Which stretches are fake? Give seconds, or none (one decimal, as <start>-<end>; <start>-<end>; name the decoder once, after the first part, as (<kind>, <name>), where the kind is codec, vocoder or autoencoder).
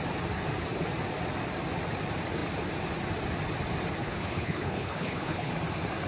4.0-5.5 (codec, HILCodec)